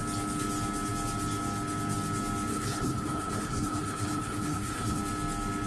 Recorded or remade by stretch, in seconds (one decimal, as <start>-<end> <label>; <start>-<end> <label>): 0.0-2.5 recorded; 2.5-5.0 remade; 5.0-5.7 recorded

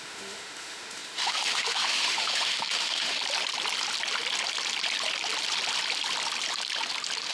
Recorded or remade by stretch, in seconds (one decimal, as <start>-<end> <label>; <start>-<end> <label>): 0.0-3.2 remade; 3.2-7.3 recorded

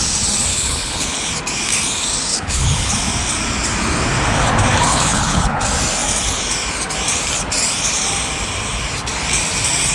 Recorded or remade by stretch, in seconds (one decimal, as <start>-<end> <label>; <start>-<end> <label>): 0.0-0.5 recorded; 0.5-1.3 remade; 1.3-2.3 recorded; 2.3-2.9 remade; 2.9-4.9 recorded; 4.9-5.6 remade; 5.6-9.9 recorded

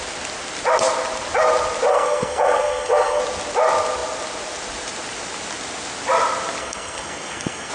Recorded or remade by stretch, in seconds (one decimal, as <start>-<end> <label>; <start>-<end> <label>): 0.0-1.9 recorded; 1.9-3.2 remade; 3.2-6.6 recorded; 6.6-7.7 remade